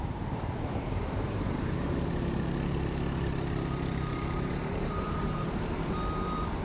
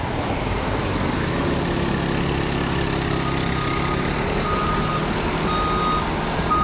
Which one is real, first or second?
second